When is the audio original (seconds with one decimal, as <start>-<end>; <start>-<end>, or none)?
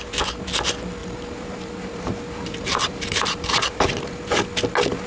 0.0-1.0; 4.1-5.1